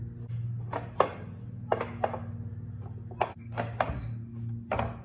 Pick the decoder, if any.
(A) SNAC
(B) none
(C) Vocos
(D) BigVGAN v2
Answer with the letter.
B